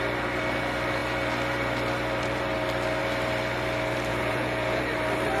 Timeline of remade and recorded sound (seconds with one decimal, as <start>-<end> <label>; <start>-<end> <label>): 0.0-4.1 recorded; 4.1-4.8 remade; 4.8-5.4 recorded